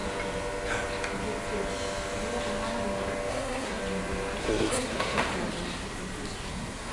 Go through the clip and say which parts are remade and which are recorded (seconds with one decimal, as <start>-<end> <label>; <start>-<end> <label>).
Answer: 0.0-3.3 recorded; 3.3-3.8 remade; 3.8-4.4 recorded; 4.4-5.3 remade; 5.3-6.5 recorded; 6.5-6.9 remade